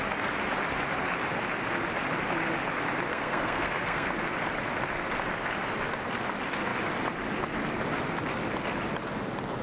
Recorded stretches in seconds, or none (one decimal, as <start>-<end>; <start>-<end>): 0.0-3.1; 4.1-9.6